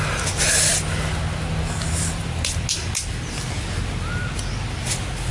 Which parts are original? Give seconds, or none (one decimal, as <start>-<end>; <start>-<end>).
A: 0.0-5.3